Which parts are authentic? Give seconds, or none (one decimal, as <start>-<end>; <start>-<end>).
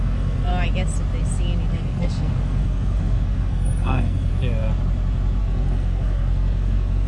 0.5-1.7; 4.3-5.4